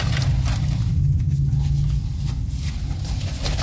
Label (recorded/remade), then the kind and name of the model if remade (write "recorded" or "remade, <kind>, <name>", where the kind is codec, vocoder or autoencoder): recorded